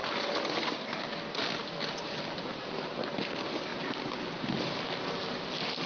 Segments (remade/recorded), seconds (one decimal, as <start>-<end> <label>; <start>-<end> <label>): 0.0-5.9 recorded